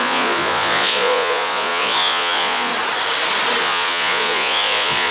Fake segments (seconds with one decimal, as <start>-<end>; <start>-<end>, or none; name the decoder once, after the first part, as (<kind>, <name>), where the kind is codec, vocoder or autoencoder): 0.0-2.7 (vocoder, Vocos); 3.6-5.1

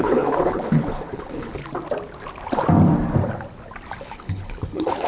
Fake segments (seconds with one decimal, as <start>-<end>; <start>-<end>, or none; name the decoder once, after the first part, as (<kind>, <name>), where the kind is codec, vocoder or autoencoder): 0.0-1.6 (codec, HILCodec); 4.0-5.1

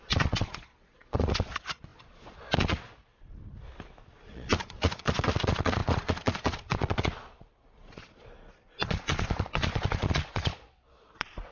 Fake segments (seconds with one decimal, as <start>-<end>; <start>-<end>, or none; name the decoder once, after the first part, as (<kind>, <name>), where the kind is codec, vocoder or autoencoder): 0.0-3.1 (vocoder, Vocos); 4.1-11.5

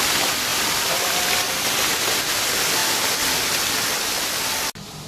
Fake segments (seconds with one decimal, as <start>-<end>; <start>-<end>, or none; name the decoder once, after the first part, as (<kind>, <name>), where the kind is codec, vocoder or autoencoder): 0.5-1.3 (vocoder, BigVGAN v2)

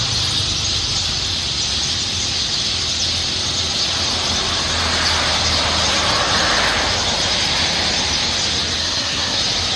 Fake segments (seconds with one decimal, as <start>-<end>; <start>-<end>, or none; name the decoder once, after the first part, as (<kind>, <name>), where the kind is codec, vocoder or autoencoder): 8.8-9.4 (codec, SNAC)

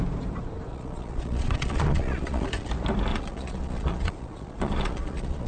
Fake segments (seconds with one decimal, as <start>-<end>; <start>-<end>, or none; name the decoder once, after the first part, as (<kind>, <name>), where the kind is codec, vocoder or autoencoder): 0.7-2.7 (vocoder, Vocos); 3.1-5.5